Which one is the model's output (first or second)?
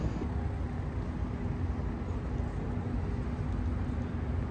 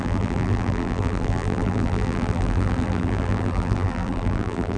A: second